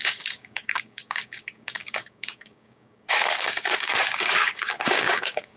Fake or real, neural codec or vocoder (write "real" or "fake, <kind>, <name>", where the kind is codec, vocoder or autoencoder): fake, codec, DAC